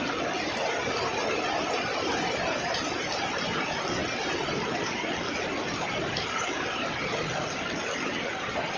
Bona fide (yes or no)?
yes